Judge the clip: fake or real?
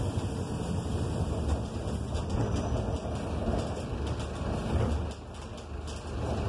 real